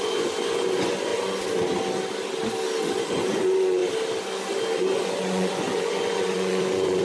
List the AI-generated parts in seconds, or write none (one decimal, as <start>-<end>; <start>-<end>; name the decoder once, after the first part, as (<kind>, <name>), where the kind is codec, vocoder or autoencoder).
0.0-1.1 (vocoder, Vocos); 2.8-3.8; 4.8-7.0